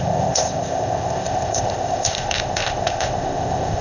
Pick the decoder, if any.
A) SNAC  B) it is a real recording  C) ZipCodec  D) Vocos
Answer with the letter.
C